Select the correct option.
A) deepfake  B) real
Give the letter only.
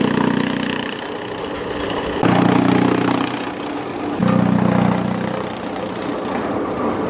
B